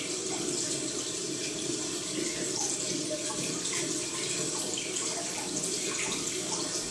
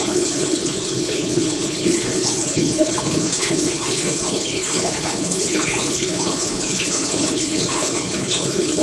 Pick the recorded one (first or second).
first